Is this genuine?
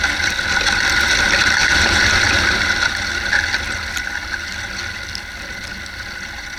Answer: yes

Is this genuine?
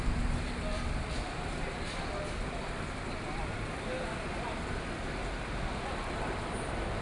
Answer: yes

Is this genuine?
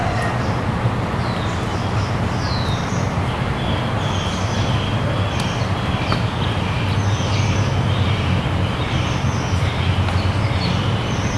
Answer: yes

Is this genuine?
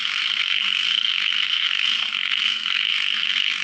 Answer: no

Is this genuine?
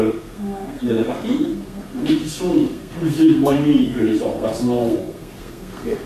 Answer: no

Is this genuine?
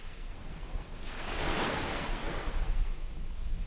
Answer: no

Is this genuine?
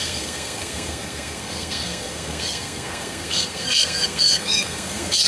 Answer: no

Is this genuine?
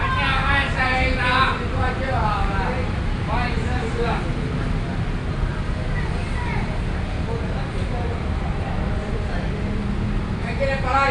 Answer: yes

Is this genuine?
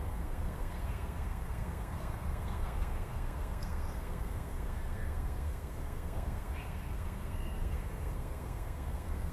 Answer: no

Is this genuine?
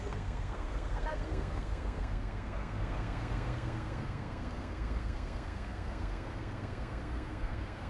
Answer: no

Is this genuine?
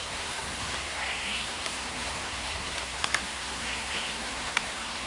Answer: no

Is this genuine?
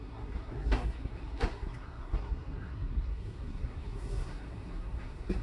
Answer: no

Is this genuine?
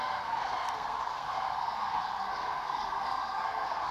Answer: no